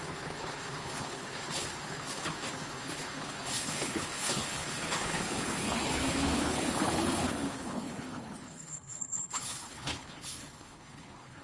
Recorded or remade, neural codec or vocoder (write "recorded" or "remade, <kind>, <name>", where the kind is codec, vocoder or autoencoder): remade, codec, HILCodec